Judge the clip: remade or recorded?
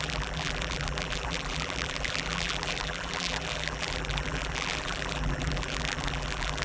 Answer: remade